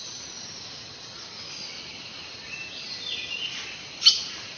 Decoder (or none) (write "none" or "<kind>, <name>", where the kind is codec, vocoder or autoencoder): vocoder, BigVGAN v2